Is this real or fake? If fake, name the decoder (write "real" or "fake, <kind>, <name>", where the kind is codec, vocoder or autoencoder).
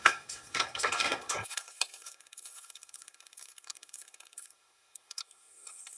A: fake, codec, SNAC